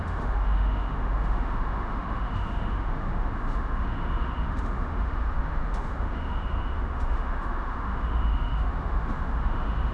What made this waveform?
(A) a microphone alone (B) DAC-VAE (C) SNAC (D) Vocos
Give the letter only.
B